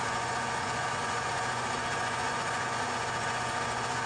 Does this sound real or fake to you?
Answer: fake